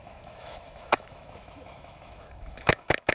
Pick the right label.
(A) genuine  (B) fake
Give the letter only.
B